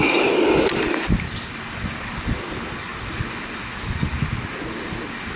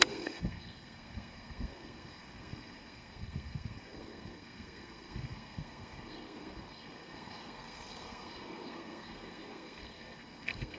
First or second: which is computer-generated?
second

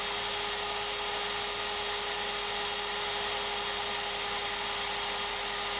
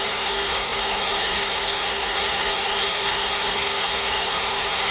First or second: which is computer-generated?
second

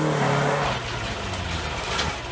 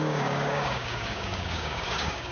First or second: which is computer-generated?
second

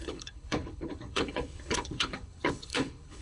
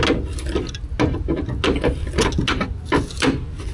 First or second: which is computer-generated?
first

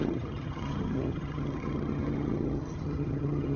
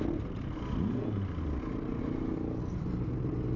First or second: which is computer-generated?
first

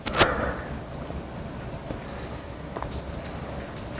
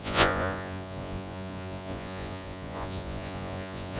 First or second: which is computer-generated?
second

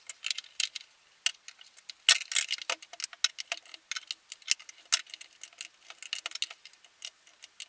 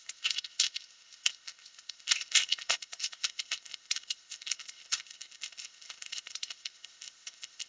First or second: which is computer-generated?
second